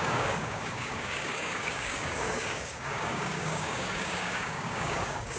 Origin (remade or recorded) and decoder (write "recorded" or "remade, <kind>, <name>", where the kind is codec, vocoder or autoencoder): remade, codec, DAC